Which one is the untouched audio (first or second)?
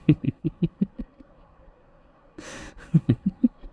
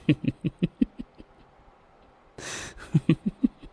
second